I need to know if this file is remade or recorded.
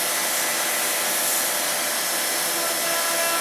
recorded